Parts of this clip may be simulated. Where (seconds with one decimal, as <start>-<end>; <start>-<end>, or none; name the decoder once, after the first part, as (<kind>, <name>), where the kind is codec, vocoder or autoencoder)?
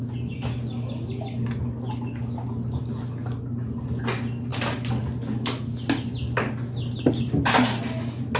none